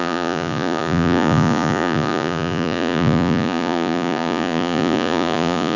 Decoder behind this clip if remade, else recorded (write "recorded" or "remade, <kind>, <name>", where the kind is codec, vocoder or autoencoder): remade, vocoder, Vocos